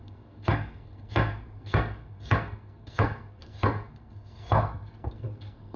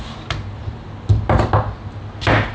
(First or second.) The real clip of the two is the second